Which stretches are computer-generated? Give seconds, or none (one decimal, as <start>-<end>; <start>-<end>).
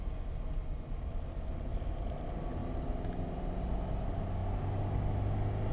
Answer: none